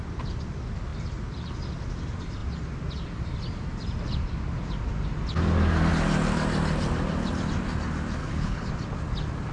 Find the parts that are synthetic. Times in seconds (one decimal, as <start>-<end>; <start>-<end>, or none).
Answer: 8.2-8.7